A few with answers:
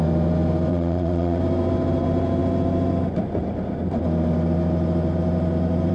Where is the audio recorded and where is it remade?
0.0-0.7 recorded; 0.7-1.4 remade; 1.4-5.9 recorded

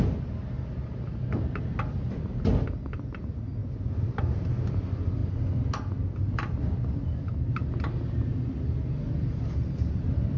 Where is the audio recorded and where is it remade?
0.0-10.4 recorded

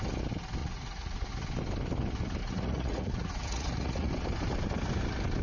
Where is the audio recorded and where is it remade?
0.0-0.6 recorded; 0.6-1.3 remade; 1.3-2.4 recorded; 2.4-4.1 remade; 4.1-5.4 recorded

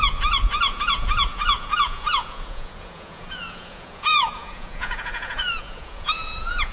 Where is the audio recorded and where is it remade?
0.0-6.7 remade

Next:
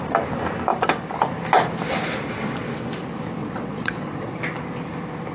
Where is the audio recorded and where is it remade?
0.0-3.4 recorded; 3.4-4.3 remade; 4.3-5.3 recorded

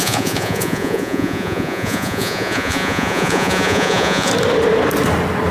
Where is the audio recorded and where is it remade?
0.0-4.3 remade; 4.3-5.5 recorded

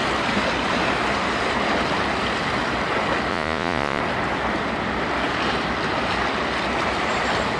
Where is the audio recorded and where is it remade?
0.0-3.3 recorded; 3.3-4.0 remade; 4.0-7.6 recorded